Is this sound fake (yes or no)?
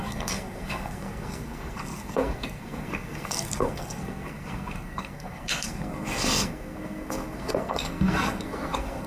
yes